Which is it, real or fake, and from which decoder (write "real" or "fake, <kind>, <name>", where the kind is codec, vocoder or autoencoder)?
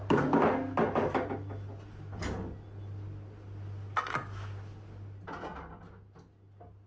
real